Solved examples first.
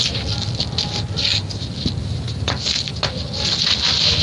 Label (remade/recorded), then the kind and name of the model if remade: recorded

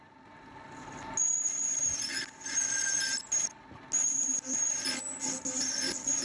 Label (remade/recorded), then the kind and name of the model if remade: recorded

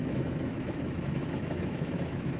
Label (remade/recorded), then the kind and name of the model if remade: remade, autoencoder, DAC-VAE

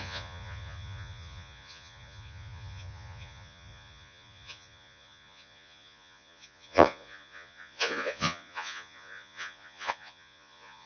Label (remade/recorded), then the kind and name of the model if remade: remade, vocoder, Vocos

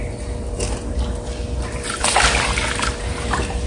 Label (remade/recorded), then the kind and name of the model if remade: recorded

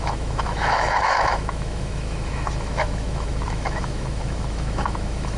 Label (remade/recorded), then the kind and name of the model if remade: remade, autoencoder, DAC-VAE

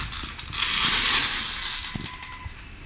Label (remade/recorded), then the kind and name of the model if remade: recorded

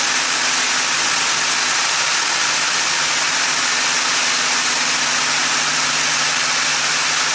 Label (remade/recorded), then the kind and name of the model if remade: recorded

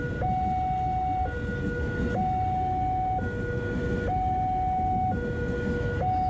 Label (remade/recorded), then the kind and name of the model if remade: recorded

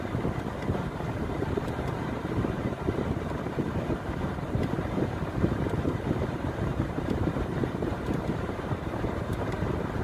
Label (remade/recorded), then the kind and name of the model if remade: remade, vocoder, BigVGAN v2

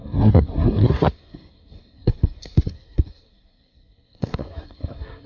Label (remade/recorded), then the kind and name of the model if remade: remade, codec, SNAC